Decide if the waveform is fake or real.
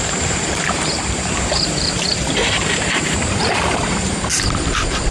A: fake